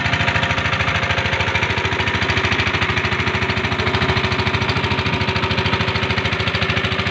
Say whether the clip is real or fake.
real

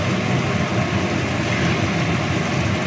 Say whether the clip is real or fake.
real